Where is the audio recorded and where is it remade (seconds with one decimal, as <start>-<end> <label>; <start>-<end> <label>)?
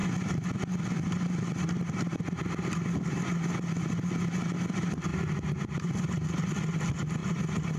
0.0-5.1 recorded; 5.1-6.4 remade; 6.4-7.2 recorded; 7.2-7.8 remade